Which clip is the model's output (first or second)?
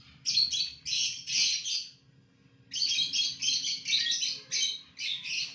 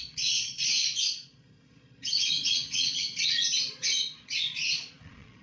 second